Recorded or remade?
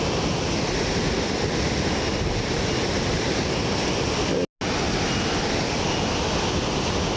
recorded